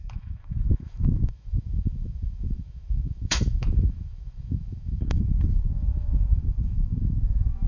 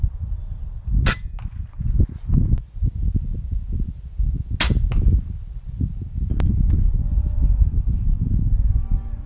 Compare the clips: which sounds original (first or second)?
second